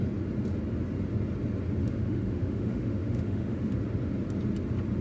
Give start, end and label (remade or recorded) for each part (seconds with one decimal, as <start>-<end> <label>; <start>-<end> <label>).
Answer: 0.0-1.8 recorded; 1.8-3.7 remade; 3.7-5.0 recorded